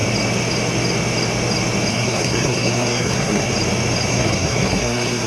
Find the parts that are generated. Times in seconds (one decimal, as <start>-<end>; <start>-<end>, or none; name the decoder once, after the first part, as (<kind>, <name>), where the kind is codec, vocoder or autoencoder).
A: 1.9-3.5 (codec, SNAC); 4.1-5.3